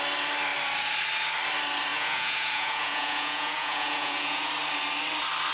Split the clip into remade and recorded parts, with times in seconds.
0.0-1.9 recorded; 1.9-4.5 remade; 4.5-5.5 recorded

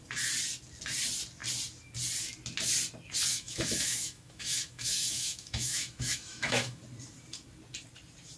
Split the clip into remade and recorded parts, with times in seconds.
0.0-3.3 recorded; 3.3-6.8 remade; 6.8-8.4 recorded

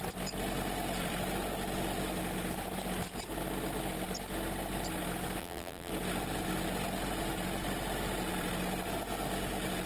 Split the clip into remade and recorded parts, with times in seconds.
0.0-5.4 recorded; 5.4-5.9 remade; 5.9-9.9 recorded

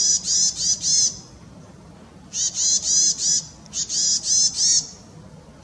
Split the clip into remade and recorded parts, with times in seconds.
0.0-5.6 recorded

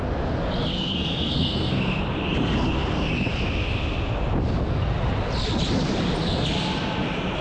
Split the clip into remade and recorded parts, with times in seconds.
0.0-0.7 recorded; 0.7-2.0 remade; 2.0-7.4 recorded

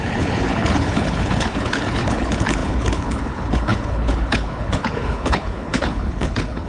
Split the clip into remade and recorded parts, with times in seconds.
0.0-6.7 remade

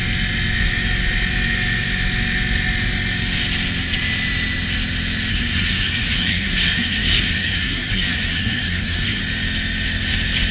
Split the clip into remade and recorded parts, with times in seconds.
0.0-5.3 recorded; 5.3-9.2 remade; 9.2-10.5 recorded

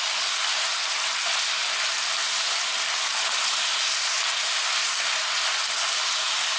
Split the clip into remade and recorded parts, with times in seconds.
0.0-6.6 recorded